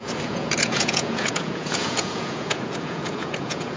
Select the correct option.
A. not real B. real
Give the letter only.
A